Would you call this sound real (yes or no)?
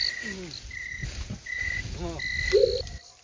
yes